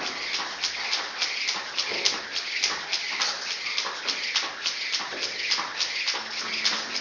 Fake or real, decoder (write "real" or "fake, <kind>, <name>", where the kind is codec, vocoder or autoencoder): real